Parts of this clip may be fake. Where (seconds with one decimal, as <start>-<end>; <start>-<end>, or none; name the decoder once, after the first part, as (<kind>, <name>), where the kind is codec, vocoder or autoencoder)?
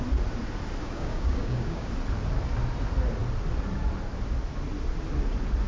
0.8-1.9 (codec, DAC)